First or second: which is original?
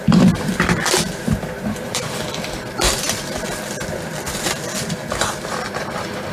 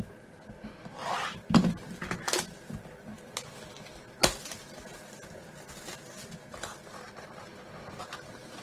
second